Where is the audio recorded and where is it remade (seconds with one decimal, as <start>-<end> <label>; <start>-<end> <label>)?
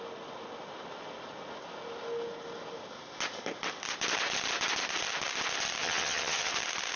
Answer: 0.0-5.8 recorded; 5.8-6.5 remade; 6.5-7.0 recorded